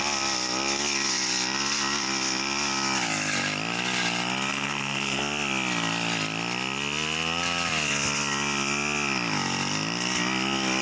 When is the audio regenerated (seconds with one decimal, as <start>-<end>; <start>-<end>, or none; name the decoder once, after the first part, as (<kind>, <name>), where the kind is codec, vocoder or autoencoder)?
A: 4.5-5.2 (codec, SNAC)